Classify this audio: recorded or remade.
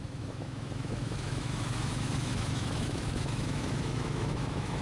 remade